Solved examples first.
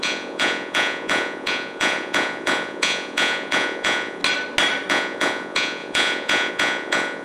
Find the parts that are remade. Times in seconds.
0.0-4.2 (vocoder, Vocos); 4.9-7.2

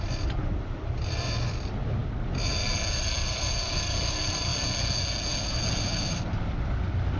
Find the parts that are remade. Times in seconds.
none

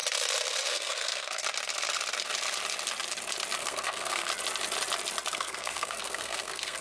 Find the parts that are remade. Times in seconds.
0.7-1.4 (codec, SNAC); 3.6-4.3; 5.3-6.8

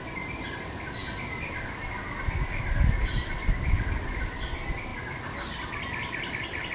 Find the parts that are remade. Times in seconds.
none

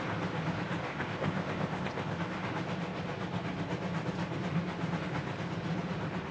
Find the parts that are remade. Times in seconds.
0.9-2.2 (codec, ZipCodec)

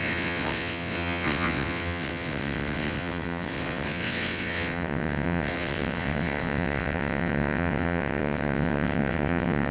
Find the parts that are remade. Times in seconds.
0.0-9.7 (vocoder, WaveNeXt)

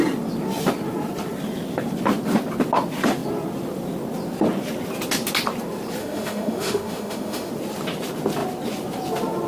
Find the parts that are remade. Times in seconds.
6.0-7.5 (autoencoder, DAC-VAE)